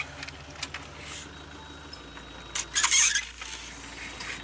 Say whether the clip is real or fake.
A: real